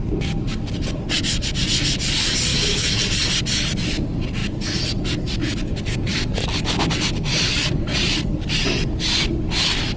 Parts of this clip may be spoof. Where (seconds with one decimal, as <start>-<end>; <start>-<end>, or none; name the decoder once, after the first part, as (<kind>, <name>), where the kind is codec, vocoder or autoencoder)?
2.5-3.0 (autoencoder, DAC-VAE)